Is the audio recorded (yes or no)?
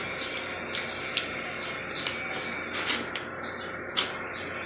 yes